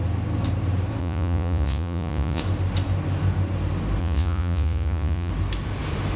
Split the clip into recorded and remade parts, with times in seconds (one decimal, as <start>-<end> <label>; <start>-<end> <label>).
0.0-1.0 recorded; 1.0-2.4 remade; 2.4-4.0 recorded; 4.0-5.3 remade; 5.3-6.2 recorded

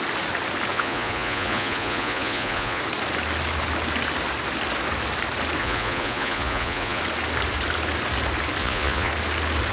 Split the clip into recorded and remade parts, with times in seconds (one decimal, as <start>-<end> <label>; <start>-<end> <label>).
0.0-0.7 recorded; 0.7-2.8 remade; 2.8-5.6 recorded; 5.6-7.0 remade; 7.0-8.6 recorded; 8.6-9.1 remade; 9.1-9.7 recorded

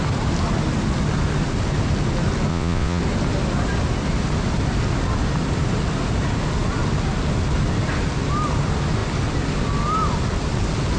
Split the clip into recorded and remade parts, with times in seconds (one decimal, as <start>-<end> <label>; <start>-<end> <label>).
0.0-2.5 recorded; 2.5-3.0 remade; 3.0-11.0 recorded

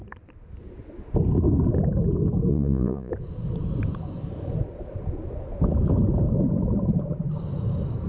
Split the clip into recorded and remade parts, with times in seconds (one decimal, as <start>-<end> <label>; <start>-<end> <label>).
0.0-2.5 recorded; 2.5-3.1 remade; 3.1-8.1 recorded